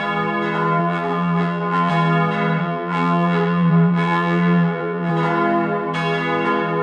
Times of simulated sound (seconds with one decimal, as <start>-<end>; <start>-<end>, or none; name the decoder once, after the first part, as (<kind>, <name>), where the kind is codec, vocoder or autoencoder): 0.8-1.9 (vocoder, BigVGAN v2); 2.6-5.1